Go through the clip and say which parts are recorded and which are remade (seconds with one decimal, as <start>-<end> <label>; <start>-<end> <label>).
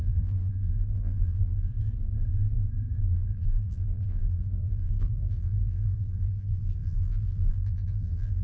0.0-1.7 remade; 1.7-3.0 recorded; 3.0-8.4 remade